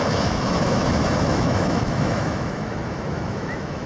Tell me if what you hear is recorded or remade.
remade